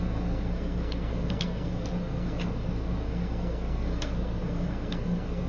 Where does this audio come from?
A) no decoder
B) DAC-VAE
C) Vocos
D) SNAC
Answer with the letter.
D